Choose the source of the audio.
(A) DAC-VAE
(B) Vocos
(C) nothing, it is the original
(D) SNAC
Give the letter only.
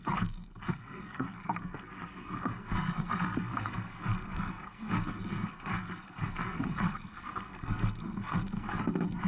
D